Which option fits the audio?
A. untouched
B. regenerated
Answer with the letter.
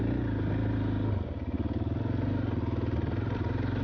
A